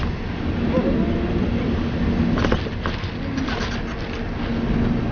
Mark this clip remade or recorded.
recorded